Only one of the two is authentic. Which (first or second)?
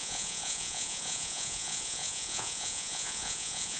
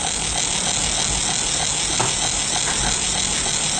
second